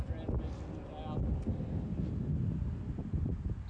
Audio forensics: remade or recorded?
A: recorded